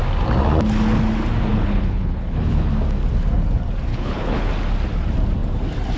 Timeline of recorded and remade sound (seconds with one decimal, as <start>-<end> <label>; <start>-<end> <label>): 0.0-1.5 recorded; 1.5-2.7 remade; 2.7-3.9 recorded; 3.9-4.5 remade; 4.5-6.0 recorded